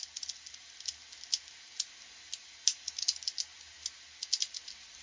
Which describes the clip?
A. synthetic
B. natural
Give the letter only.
B